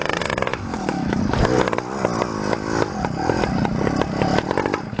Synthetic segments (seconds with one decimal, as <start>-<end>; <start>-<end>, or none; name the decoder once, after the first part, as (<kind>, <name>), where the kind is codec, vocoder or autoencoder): 0.5-1.2 (autoencoder, DAC-VAE)